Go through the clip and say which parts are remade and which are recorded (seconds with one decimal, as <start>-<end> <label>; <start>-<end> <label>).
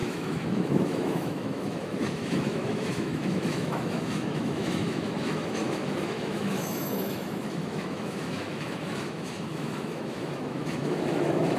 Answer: 0.0-11.6 remade